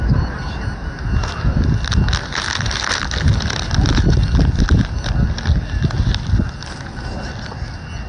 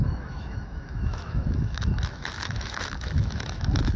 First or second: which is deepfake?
second